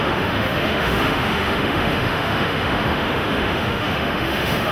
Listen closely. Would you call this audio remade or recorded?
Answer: remade